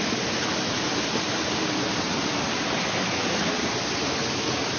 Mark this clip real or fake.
real